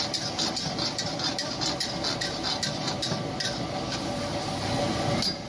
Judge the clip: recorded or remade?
recorded